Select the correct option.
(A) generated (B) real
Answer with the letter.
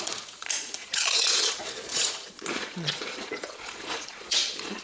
A